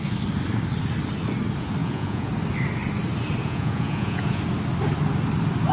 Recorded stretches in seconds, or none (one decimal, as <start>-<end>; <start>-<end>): 0.0-1.8; 2.3-3.4; 4.4-5.7